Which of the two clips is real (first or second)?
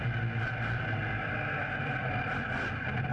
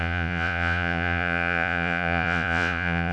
first